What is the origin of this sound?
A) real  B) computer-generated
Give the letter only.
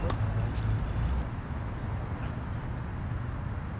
A